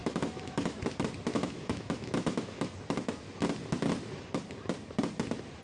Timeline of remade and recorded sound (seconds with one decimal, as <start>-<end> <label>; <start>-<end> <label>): 0.0-0.8 remade; 0.8-1.3 recorded; 1.3-2.7 remade; 2.7-5.6 recorded